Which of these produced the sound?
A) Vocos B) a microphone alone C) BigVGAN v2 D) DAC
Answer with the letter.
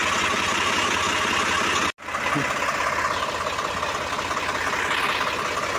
B